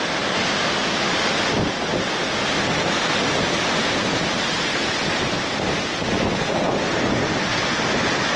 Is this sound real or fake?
real